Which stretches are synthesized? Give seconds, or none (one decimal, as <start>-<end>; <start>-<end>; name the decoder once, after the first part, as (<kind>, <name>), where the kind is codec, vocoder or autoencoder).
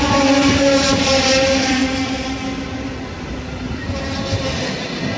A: 0.0-1.8 (vocoder, BigVGAN v2)